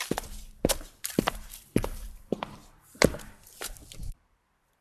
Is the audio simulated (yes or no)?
yes